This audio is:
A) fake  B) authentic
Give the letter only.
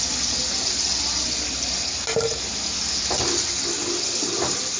B